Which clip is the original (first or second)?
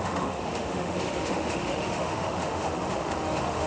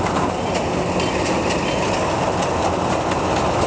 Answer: second